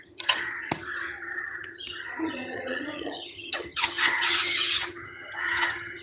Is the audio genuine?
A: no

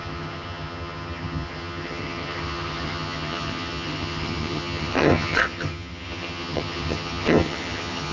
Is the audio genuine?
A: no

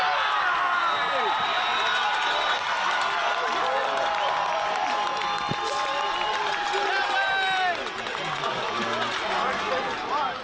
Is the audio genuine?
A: yes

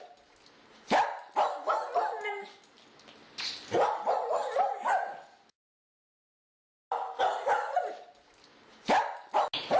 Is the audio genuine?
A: yes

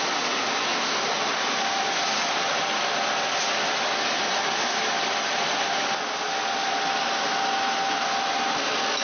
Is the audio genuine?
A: yes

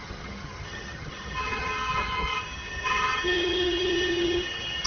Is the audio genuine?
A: no